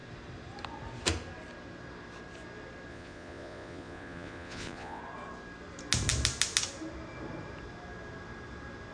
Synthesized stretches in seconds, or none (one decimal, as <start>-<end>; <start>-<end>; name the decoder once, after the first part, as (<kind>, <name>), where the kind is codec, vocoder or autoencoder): 2.9-5.0 (vocoder, Vocos)